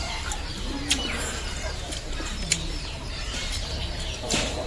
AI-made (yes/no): yes